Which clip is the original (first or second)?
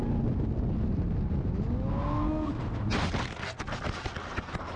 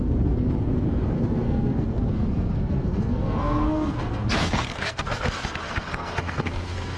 first